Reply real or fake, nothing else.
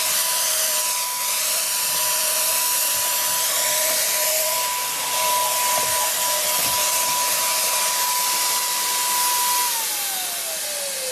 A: real